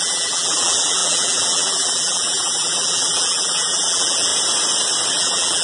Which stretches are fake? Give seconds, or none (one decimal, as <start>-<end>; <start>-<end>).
0.0-4.3; 5.1-5.6